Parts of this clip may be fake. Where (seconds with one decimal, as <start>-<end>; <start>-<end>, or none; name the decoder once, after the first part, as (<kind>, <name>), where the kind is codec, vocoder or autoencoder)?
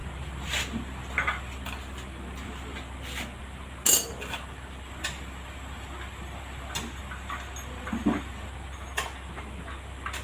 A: none